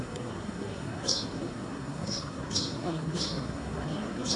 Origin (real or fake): fake